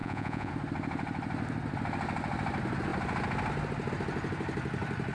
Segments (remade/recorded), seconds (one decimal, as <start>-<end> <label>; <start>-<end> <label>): 0.0-0.5 remade; 0.5-5.1 recorded